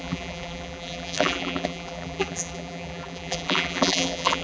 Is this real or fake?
fake